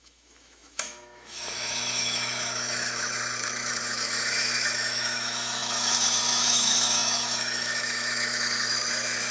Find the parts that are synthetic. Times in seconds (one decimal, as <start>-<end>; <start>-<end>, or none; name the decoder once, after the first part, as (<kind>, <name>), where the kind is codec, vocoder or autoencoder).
0.0-9.3 (autoencoder, DAC-VAE)